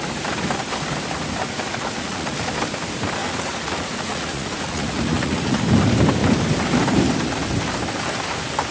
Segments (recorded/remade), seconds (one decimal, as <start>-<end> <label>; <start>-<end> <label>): 0.0-1.4 recorded; 1.4-2.5 remade; 2.5-3.2 recorded; 3.2-5.6 remade; 5.6-8.7 recorded